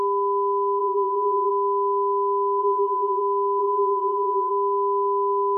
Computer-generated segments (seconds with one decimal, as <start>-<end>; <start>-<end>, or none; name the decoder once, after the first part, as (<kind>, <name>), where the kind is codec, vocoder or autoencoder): 0.8-1.5 (vocoder, BigVGAN v2); 2.6-3.2; 3.6-4.5